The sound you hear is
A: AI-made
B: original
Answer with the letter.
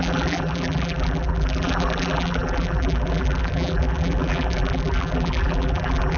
A